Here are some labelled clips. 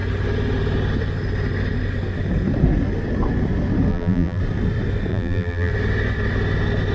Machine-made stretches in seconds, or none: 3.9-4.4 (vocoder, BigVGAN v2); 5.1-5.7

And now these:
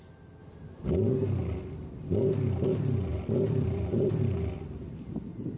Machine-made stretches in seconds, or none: 3.1-4.2 (vocoder, BigVGAN v2)

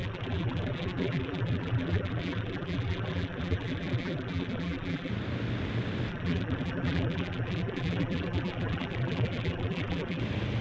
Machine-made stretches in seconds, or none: 0.0-5.1 (vocoder, BigVGAN v2); 6.1-10.2

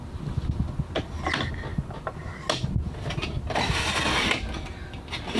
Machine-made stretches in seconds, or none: 1.7-2.3 (vocoder, BigVGAN v2)

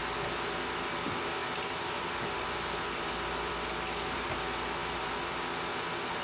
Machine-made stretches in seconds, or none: 1.4-3.5 (vocoder, BigVGAN v2); 4.8-5.5

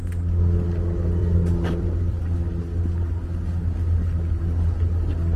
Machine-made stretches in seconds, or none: 1.2-2.0 (vocoder, BigVGAN v2)

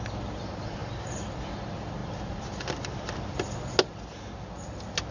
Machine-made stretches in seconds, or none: 0.8-1.5 (vocoder, BigVGAN v2); 2.0-3.6

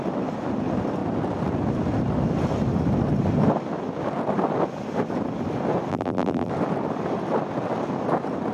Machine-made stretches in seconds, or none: 5.9-6.5 (vocoder, BigVGAN v2)